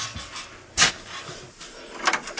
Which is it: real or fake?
real